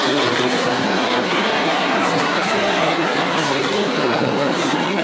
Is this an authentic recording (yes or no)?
no